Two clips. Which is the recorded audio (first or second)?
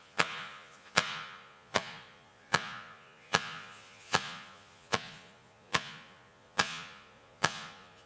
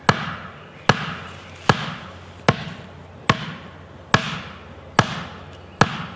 second